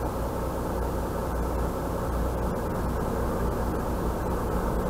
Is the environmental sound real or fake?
real